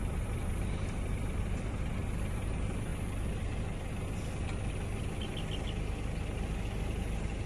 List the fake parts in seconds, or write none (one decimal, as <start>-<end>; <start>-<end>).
0.0-2.9; 6.8-7.5